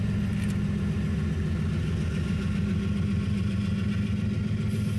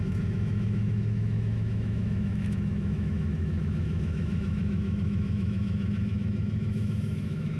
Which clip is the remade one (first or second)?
second